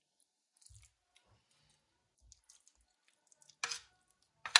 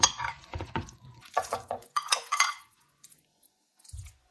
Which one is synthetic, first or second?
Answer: second